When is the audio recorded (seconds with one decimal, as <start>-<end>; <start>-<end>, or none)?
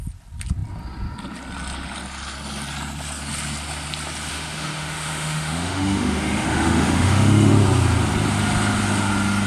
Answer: 0.0-4.3; 7.5-9.5